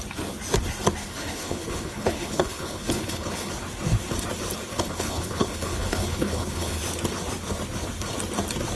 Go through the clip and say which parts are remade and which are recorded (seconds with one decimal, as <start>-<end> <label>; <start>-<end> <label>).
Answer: 0.0-1.0 recorded; 1.0-3.5 remade; 3.5-4.7 recorded; 4.7-6.8 remade; 6.8-8.8 recorded